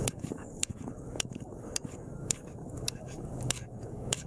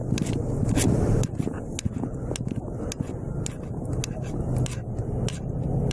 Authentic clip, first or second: second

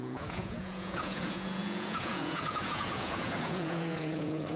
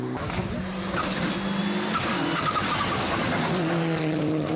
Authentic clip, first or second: second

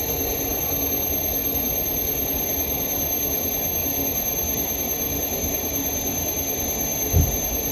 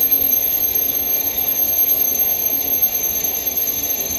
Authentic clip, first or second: first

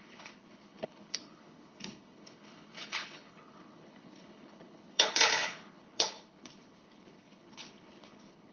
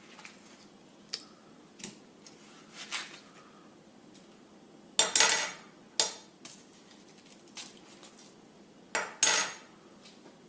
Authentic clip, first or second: second